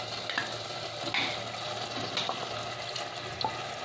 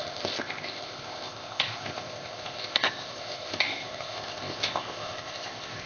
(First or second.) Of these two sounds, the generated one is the second